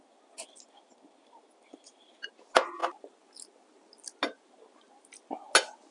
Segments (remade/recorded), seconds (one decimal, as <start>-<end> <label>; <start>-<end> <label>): 0.0-5.9 recorded

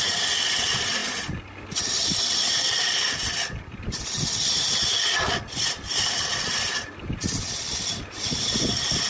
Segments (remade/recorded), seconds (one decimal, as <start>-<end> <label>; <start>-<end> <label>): 0.0-9.1 recorded

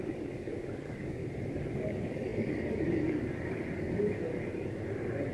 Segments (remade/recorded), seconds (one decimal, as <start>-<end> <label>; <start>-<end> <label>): 0.0-1.2 remade; 1.2-1.8 recorded; 1.8-4.3 remade; 4.3-5.3 recorded

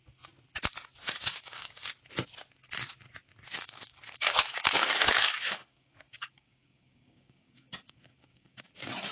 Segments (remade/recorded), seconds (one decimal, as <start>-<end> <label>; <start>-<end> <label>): 0.0-1.3 recorded; 1.3-1.9 remade; 1.9-3.9 recorded; 3.9-8.7 remade; 8.7-9.1 recorded

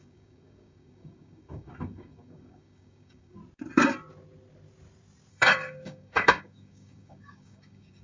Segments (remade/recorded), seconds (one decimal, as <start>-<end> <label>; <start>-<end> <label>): 0.0-3.4 remade; 3.4-5.3 recorded; 5.3-8.0 remade